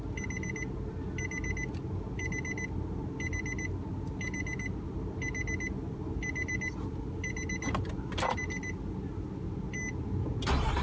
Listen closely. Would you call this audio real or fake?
real